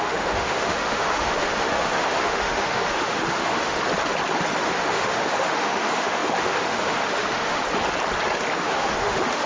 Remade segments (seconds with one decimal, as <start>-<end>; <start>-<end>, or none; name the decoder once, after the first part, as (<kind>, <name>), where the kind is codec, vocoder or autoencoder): 0.0-3.9 (autoencoder, DAC-VAE); 4.6-7.6; 8.6-9.5